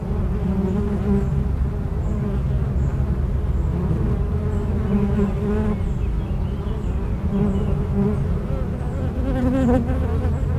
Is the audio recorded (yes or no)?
yes